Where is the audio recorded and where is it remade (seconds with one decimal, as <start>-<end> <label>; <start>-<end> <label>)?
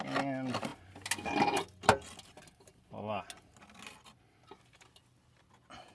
0.0-5.9 recorded